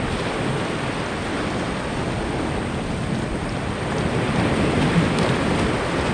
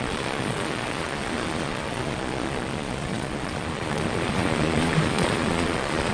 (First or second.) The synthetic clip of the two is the second